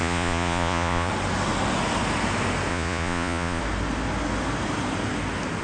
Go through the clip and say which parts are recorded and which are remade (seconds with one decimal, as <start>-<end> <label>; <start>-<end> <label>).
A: 0.0-1.1 remade; 1.1-2.7 recorded; 2.7-3.6 remade; 3.6-5.6 recorded